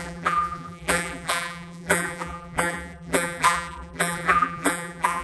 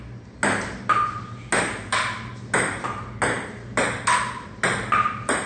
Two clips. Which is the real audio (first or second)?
second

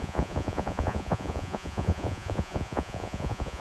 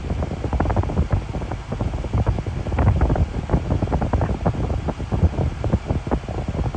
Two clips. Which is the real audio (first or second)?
second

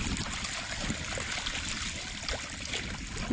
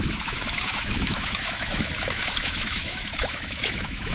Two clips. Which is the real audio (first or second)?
first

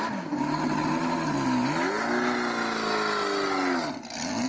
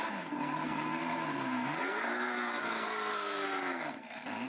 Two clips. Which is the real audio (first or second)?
first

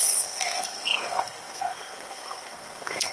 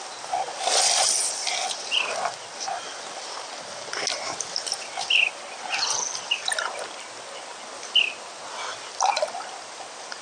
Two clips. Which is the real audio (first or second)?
second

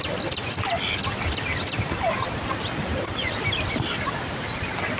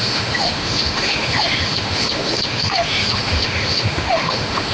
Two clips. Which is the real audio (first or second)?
first